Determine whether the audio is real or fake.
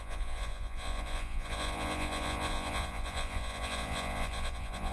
fake